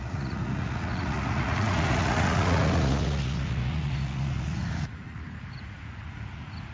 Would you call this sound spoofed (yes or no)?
yes